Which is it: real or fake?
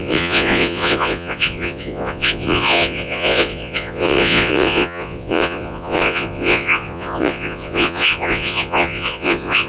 fake